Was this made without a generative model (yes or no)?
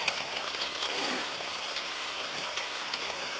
no